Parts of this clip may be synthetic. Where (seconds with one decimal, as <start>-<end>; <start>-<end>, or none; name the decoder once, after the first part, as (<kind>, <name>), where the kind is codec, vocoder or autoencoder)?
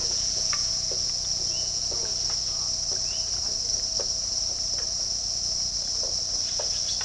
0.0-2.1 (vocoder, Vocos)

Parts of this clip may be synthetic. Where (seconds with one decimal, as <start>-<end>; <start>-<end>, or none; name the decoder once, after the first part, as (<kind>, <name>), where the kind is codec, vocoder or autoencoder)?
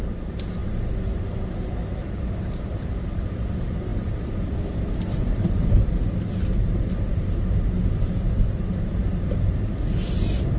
none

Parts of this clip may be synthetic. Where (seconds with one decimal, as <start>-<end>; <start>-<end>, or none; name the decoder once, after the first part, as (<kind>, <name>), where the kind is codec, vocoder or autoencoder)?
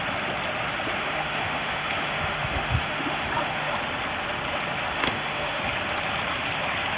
1.0-3.7 (autoencoder, DAC-VAE); 4.9-5.6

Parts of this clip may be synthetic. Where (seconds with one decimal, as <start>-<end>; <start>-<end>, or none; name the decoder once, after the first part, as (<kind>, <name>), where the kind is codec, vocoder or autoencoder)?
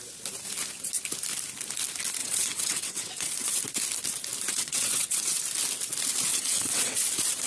2.2-3.6 (vocoder, WaveNeXt); 4.5-5.4; 6.3-7.1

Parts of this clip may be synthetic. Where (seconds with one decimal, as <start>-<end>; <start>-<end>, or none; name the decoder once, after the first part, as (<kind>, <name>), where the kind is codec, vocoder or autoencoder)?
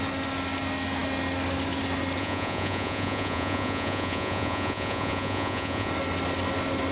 2.2-5.9 (vocoder, Vocos)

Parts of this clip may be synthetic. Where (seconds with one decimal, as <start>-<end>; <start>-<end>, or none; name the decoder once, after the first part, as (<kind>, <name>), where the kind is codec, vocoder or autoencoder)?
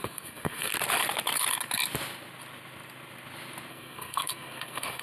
0.0-0.7 (codec, SNAC); 3.7-5.0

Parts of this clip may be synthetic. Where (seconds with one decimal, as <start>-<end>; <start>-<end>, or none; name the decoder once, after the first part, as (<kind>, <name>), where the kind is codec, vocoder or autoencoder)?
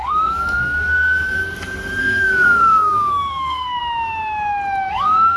0.0-1.4 (codec, SNAC); 2.0-3.8; 4.9-5.4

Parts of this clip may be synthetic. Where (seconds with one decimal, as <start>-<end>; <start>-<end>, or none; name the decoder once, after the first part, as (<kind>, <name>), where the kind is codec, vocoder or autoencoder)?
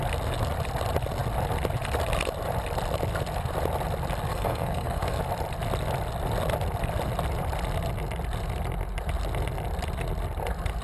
4.3-5.2 (codec, SNAC)